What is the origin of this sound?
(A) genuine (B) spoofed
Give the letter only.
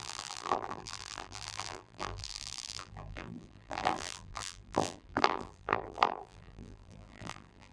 B